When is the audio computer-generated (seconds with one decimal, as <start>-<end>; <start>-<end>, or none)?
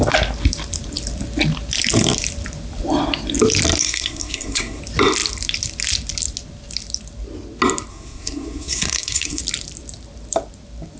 3.8-4.8; 7.9-9.4